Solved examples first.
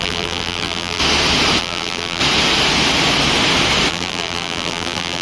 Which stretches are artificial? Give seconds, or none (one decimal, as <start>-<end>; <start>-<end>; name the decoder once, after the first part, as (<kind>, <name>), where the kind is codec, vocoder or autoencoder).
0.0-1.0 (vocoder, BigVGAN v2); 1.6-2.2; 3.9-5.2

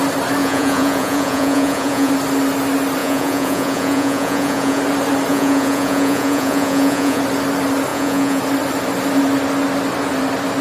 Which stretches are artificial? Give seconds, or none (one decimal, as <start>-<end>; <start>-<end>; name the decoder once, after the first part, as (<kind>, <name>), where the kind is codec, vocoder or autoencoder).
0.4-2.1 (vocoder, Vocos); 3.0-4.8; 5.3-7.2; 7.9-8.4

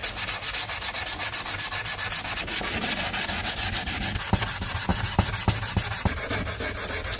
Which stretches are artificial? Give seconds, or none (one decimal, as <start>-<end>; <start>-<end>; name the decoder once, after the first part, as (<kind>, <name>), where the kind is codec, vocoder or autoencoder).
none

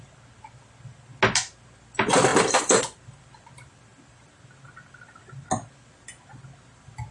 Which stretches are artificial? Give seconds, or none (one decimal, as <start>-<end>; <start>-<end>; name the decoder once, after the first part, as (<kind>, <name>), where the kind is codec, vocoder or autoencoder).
none